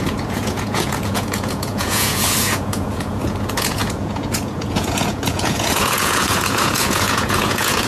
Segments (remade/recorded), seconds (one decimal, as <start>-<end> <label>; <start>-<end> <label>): 0.0-7.9 remade